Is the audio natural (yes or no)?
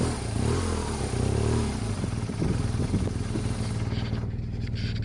yes